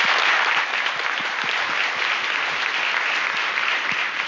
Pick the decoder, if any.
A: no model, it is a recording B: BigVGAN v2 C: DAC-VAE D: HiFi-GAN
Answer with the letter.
A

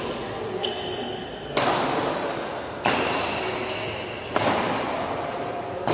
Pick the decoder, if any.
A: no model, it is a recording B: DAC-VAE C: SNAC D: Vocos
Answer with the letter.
A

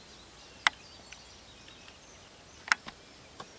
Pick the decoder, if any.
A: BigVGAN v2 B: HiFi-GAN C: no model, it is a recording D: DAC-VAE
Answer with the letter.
C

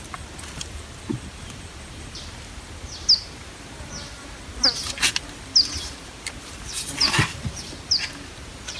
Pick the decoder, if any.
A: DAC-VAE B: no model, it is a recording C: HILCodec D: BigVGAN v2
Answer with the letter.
B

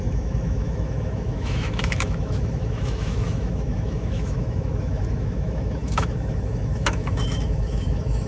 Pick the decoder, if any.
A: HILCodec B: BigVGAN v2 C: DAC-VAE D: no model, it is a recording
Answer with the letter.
C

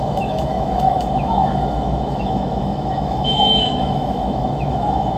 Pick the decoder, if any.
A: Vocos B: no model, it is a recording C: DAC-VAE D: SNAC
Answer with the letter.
C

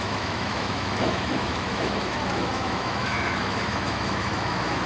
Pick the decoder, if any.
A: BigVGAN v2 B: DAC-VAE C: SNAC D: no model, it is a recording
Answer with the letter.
B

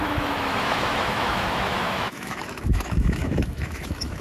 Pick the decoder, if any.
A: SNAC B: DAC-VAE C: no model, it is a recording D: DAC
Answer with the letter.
B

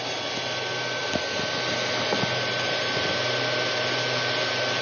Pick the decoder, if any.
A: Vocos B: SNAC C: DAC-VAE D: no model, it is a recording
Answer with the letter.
D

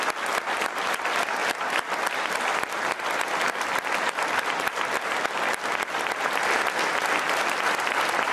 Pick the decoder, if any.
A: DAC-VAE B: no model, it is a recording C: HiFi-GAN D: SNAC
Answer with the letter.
B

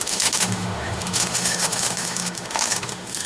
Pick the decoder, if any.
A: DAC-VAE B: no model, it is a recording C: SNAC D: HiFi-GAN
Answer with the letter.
A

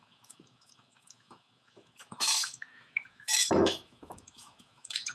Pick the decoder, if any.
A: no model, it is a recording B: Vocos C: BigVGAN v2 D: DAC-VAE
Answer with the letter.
D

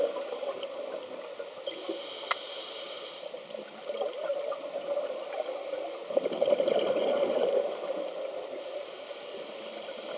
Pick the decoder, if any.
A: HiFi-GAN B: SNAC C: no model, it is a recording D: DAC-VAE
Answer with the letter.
C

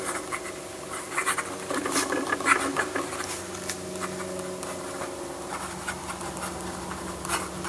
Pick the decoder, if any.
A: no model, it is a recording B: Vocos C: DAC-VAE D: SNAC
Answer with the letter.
A